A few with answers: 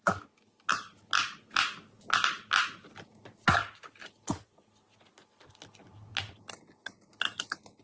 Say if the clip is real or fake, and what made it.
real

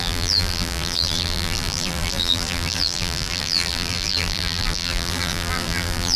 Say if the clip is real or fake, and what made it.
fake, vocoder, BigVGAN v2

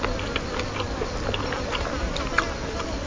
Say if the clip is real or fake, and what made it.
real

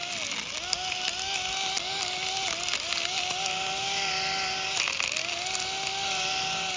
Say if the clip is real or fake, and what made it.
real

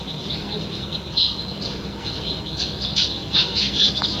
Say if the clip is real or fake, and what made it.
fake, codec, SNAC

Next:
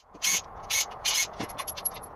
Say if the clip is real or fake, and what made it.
fake, vocoder, Vocos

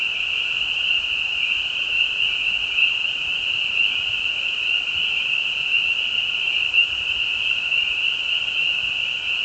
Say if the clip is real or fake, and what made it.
real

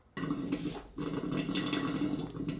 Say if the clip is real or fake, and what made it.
real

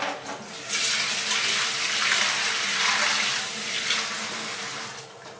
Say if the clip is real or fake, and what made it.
real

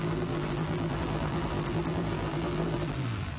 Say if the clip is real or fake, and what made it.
fake, vocoder, BigVGAN v2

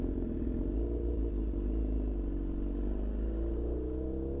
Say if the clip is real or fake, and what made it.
real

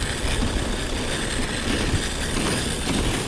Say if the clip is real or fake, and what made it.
real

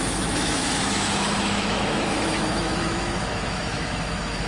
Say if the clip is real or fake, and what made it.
fake, autoencoder, DAC-VAE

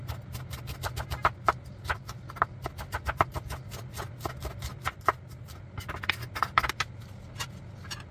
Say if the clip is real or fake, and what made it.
real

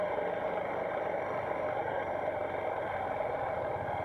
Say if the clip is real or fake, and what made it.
real